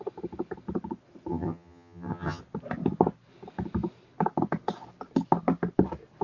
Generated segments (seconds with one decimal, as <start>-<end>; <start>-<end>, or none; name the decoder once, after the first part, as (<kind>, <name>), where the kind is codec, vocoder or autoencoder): 1.3-2.4 (vocoder, HiFi-GAN)